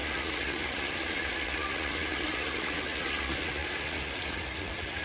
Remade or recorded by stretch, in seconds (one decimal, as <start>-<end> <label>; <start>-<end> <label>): 0.0-5.0 remade